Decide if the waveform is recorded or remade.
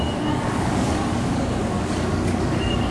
remade